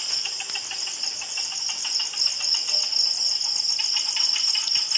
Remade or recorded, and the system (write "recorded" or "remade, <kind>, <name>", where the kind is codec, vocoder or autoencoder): recorded